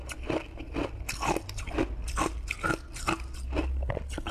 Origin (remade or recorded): recorded